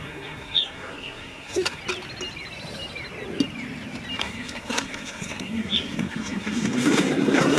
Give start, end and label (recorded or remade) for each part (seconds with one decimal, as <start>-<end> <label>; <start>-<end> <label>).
0.0-1.8 remade; 1.8-4.2 recorded; 4.2-7.6 remade